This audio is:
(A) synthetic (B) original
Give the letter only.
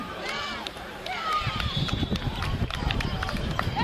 A